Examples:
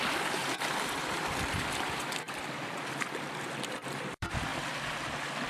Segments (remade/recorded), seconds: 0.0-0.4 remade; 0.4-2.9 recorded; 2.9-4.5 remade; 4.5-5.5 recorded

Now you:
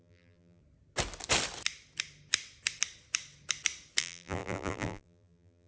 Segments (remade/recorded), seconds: 0.0-0.6 remade; 0.6-4.0 recorded; 4.0-5.7 remade